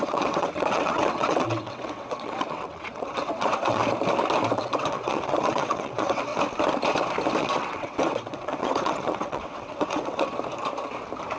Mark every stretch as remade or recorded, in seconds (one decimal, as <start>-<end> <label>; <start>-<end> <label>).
0.0-3.8 remade; 3.8-4.5 recorded; 4.5-6.3 remade; 6.3-7.4 recorded; 7.4-10.3 remade; 10.3-11.4 recorded